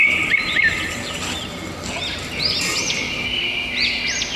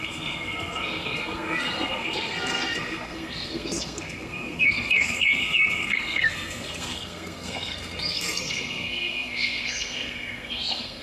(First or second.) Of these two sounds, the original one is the first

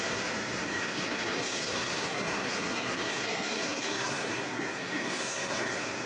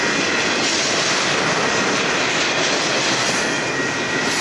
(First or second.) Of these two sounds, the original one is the second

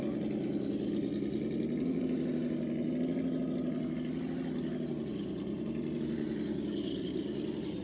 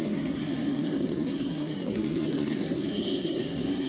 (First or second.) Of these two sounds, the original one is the first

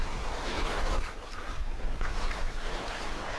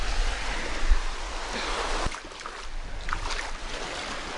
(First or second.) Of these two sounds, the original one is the second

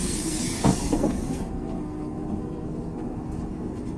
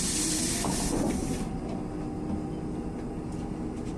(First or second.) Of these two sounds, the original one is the second